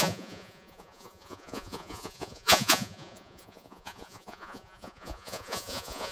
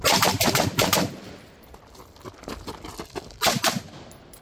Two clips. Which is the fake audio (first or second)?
first